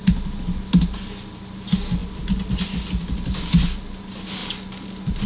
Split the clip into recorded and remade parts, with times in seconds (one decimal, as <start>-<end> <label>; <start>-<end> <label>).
0.0-5.3 recorded